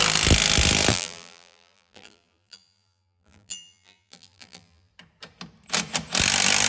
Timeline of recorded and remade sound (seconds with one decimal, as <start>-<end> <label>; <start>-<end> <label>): 0.0-0.9 recorded; 0.9-4.9 remade; 4.9-6.7 recorded